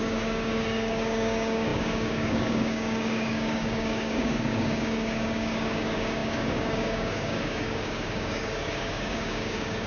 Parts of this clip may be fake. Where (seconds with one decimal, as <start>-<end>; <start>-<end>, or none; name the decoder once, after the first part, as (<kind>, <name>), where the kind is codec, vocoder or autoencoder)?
0.0-9.9 (codec, DAC)